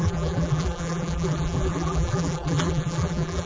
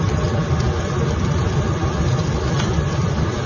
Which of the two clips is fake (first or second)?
first